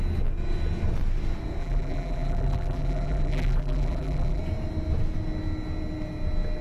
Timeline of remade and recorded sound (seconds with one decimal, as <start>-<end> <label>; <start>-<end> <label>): 0.0-1.6 recorded; 1.6-4.4 remade; 4.4-6.6 recorded